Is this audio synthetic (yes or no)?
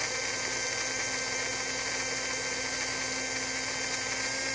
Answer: no